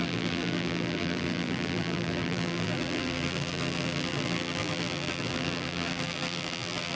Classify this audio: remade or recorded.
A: remade